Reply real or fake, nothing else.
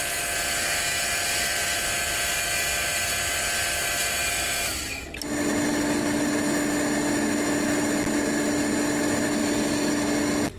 real